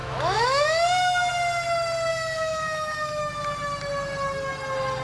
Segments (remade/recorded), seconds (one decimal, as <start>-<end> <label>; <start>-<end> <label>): 0.0-1.3 remade; 1.3-2.1 recorded; 2.1-3.3 remade; 3.3-5.0 recorded